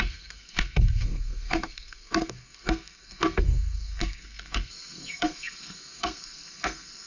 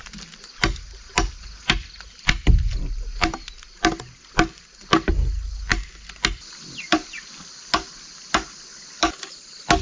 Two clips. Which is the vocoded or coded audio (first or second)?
first